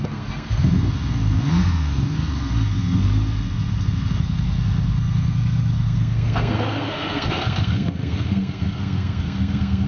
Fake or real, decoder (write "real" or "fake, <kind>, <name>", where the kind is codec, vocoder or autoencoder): fake, codec, SNAC